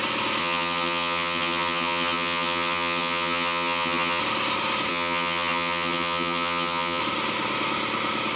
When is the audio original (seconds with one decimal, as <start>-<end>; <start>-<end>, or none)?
0.0-0.4; 4.2-4.9; 7.0-8.4